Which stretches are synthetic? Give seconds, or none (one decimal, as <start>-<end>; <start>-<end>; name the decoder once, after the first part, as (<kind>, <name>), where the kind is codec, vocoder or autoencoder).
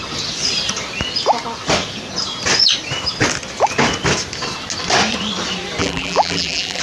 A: 5.8-6.8 (vocoder, BigVGAN v2)